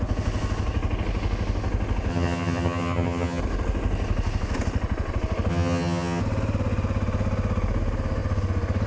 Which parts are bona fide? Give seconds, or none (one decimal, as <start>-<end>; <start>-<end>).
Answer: 0.0-2.1; 3.4-5.5; 6.2-8.9